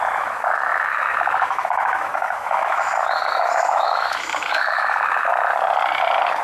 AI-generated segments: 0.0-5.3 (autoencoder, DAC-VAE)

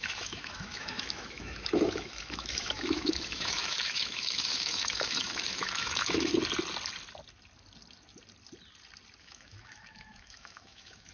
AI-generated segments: 0.0-6.3 (autoencoder, DAC-VAE); 9.2-11.1